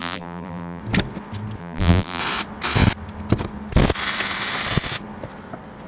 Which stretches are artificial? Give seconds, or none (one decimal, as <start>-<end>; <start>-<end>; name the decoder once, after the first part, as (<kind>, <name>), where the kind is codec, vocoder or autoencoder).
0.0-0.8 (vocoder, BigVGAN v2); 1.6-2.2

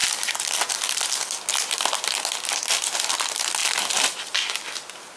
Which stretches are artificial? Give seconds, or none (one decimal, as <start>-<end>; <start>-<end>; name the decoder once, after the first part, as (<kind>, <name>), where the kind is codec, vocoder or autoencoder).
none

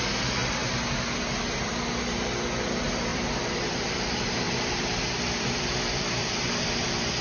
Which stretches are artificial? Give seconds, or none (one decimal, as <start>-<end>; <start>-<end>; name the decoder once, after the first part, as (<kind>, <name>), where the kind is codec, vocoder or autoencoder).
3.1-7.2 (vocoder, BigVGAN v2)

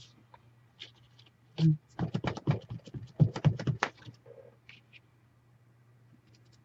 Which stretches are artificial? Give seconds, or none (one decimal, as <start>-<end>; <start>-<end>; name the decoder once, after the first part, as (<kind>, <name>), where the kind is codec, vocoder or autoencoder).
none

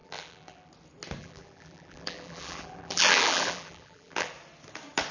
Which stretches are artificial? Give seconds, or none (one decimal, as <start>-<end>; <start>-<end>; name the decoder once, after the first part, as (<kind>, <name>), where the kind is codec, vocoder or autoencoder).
0.0-0.7 (vocoder, BigVGAN v2); 1.2-4.3

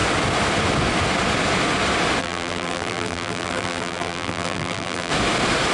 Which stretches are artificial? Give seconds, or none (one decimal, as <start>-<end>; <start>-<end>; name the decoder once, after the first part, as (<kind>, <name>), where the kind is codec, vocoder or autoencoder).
2.2-5.1 (vocoder, BigVGAN v2)

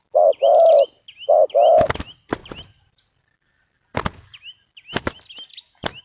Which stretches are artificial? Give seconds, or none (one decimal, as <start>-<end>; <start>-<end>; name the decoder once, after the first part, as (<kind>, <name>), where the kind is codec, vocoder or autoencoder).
none

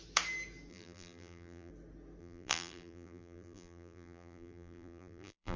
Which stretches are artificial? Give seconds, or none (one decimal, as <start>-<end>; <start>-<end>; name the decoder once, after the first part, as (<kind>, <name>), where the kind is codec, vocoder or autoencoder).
0.7-1.7 (vocoder, BigVGAN v2); 2.2-5.6